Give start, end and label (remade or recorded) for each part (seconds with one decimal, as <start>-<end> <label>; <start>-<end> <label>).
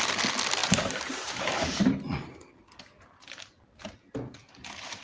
0.0-0.6 recorded; 0.6-1.9 remade; 1.9-4.4 recorded; 4.4-5.0 remade